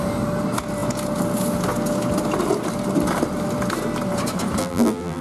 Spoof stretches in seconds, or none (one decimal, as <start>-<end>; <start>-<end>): 4.6-5.2